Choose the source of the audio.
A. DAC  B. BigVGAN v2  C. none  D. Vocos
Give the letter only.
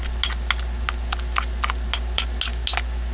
C